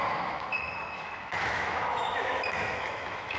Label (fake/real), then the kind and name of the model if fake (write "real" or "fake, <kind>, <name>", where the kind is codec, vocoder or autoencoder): fake, autoencoder, DAC-VAE